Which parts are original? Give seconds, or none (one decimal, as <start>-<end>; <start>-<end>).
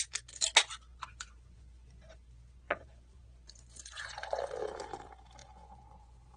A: 0.0-0.9; 4.4-5.4